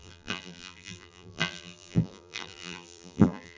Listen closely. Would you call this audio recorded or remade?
remade